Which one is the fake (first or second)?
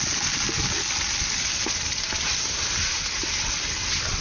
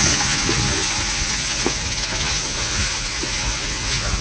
second